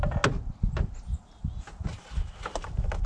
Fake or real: real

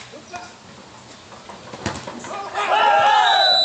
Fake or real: real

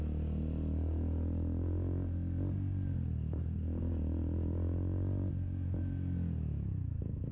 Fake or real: real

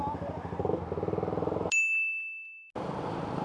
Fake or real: real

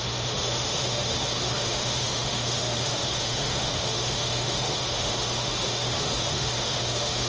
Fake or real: fake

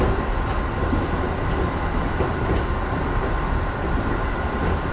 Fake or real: real